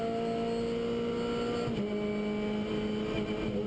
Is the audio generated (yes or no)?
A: no